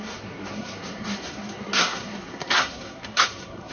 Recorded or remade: remade